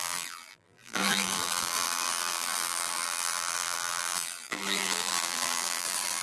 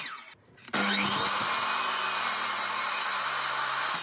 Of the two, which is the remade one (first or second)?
first